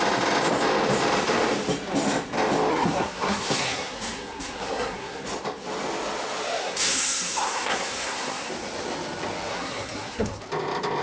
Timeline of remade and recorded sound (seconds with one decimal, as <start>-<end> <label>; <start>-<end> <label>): 0.0-2.7 recorded; 2.7-5.2 remade; 5.2-6.6 recorded; 6.6-8.5 remade; 8.5-9.5 recorded; 9.5-10.4 remade; 10.4-11.0 recorded